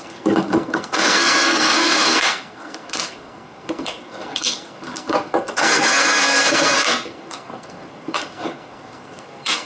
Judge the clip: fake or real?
fake